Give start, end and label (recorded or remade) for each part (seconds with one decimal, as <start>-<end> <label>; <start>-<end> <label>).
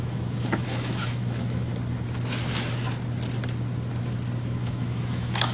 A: 0.0-1.7 remade; 1.7-4.4 recorded; 4.4-5.5 remade